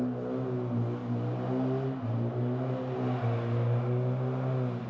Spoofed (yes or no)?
no